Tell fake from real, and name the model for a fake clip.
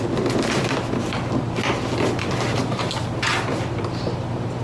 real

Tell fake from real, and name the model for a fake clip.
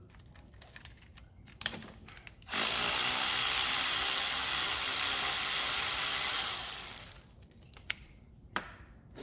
fake, vocoder, BigVGAN v2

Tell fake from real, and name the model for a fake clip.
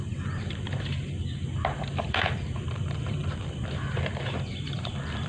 fake, vocoder, BigVGAN v2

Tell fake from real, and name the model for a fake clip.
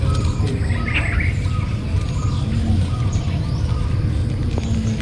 real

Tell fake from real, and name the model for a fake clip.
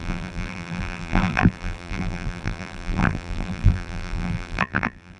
fake, vocoder, BigVGAN v2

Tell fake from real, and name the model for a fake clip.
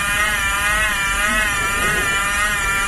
fake, vocoder, BigVGAN v2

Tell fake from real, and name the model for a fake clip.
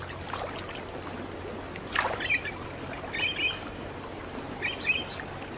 real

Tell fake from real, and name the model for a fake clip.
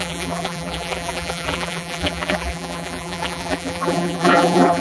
fake, vocoder, BigVGAN v2